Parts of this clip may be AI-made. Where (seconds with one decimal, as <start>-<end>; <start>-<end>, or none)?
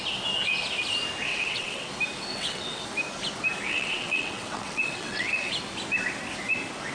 1.3-1.9; 2.3-2.8; 3.7-5.5